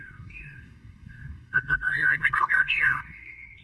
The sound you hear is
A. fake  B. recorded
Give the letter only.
A